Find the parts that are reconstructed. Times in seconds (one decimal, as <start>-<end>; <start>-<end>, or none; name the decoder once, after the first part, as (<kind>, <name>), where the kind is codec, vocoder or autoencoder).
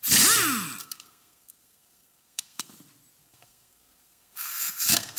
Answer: 0.8-2.7 (codec, SNAC); 3.2-5.2